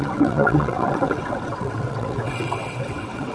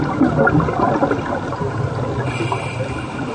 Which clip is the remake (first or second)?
first